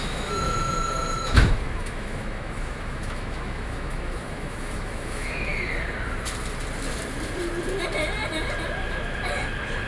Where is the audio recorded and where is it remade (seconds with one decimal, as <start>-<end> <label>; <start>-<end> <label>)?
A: 0.0-5.5 remade; 5.5-9.9 recorded